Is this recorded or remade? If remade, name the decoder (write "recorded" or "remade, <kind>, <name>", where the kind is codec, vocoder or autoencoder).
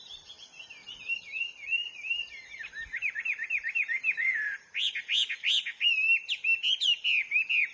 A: recorded